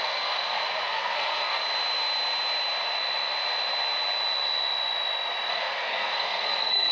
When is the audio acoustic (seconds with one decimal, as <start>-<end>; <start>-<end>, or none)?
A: 1.6-5.5